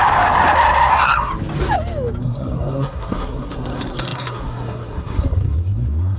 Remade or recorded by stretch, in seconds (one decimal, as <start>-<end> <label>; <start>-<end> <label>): 0.0-0.9 recorded; 0.9-1.3 remade; 1.3-2.2 recorded; 2.2-6.2 remade